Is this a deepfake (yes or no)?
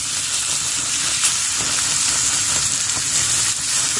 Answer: no